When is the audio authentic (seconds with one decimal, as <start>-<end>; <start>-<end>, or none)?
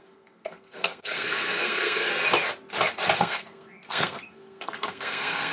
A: 2.1-3.2